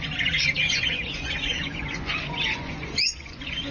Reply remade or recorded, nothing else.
remade